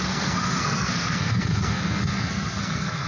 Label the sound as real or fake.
fake